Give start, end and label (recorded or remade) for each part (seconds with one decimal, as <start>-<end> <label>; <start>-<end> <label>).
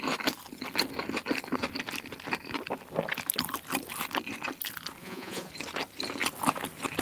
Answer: 0.0-5.0 recorded; 5.0-5.5 remade; 5.5-7.0 recorded